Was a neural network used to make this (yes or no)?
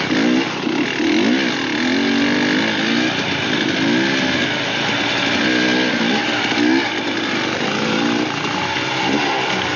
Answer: no